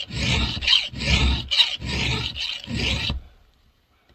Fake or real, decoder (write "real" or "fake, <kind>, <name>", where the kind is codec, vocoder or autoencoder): real